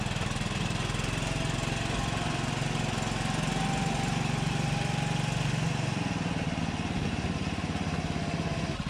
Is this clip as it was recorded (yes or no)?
yes